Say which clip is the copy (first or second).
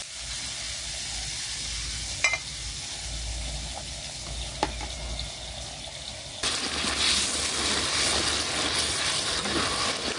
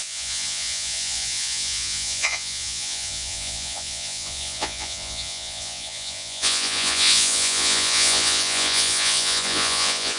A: second